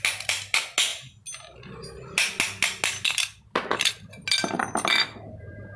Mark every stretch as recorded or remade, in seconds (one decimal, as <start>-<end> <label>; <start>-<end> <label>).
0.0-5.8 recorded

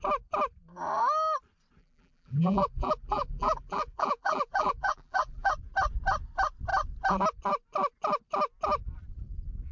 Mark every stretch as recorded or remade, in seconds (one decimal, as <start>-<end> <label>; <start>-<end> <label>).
0.0-1.8 recorded; 1.8-5.5 remade; 5.5-9.7 recorded

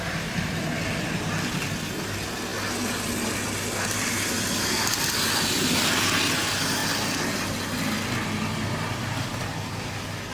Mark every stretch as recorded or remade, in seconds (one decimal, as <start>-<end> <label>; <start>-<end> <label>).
0.0-10.3 recorded

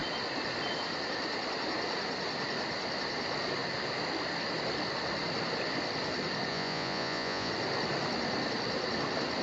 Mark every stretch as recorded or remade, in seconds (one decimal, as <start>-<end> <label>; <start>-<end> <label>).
0.0-6.5 recorded; 6.5-7.5 remade; 7.5-9.4 recorded

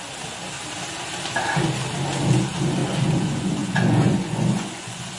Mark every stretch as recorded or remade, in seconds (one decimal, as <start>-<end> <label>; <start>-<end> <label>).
0.0-2.8 recorded; 2.8-5.2 remade